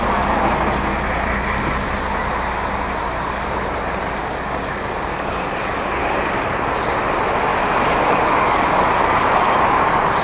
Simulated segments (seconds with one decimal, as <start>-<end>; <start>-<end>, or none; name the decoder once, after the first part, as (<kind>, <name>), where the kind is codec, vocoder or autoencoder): 4.2-6.3 (codec, DAC); 7.5-9.4

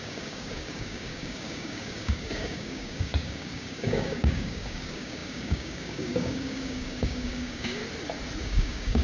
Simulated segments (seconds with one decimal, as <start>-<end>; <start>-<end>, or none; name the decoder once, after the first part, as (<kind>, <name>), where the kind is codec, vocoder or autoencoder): 0.0-7.8 (codec, DAC); 8.4-9.0

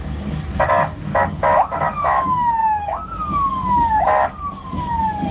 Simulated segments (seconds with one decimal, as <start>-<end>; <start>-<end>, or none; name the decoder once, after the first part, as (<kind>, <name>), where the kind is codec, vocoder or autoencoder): 0.0-5.3 (codec, DAC)

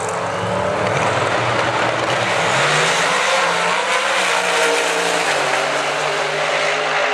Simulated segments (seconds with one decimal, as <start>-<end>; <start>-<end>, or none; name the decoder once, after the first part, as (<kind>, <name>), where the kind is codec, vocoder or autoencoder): none

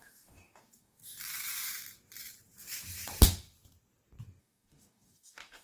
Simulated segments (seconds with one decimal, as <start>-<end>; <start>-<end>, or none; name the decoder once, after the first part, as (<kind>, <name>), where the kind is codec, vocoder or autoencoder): 0.0-1.0 (codec, DAC); 4.4-5.6

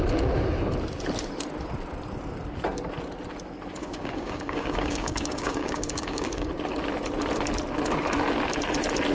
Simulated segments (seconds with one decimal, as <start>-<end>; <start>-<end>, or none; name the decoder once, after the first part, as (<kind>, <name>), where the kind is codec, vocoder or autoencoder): 3.8-6.5 (codec, DAC)

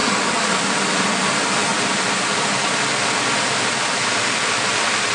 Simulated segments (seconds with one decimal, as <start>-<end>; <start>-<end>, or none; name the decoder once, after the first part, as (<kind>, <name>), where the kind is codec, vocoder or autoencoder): 0.0-0.6 (codec, DAC)